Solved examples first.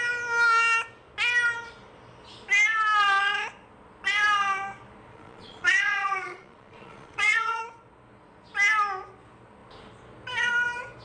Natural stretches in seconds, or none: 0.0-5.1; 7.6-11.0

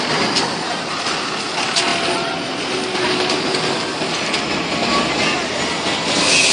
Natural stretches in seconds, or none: 0.0-6.5

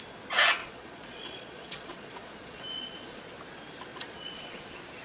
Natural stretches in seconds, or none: 0.0-0.6; 3.2-3.9; 4.6-5.0